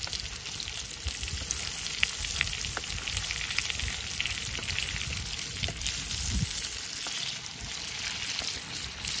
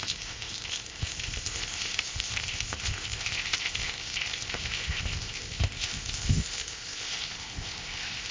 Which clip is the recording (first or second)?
first